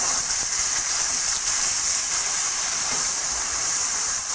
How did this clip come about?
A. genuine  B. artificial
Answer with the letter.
B